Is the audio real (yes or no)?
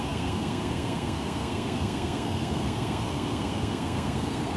no